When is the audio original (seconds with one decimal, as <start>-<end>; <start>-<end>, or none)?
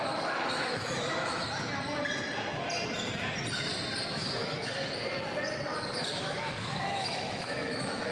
1.4-4.1; 4.7-6.2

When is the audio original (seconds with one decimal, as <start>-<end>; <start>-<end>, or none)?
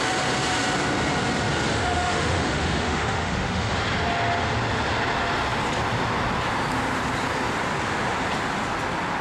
0.0-1.7; 3.7-9.2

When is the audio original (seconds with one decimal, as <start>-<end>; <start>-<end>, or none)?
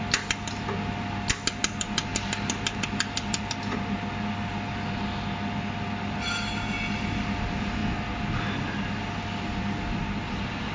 0.0-10.7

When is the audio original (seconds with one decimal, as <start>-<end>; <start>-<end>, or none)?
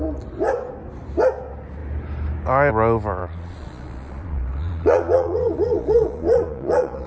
0.0-3.2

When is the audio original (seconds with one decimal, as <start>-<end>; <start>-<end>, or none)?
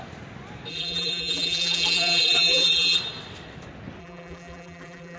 0.0-0.7; 3.0-4.0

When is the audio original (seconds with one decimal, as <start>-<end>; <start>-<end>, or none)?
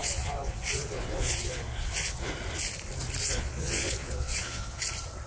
2.3-3.2; 4.8-5.3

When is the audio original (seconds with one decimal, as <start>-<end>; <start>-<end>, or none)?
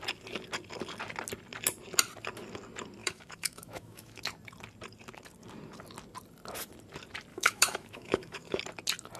0.0-3.0; 4.2-7.3; 8.6-9.2